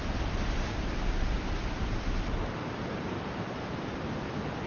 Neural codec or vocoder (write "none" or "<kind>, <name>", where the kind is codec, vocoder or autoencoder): none